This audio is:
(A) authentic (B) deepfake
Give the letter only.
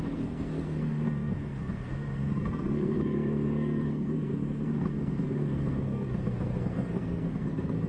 B